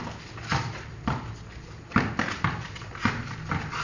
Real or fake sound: real